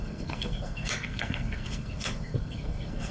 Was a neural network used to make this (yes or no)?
yes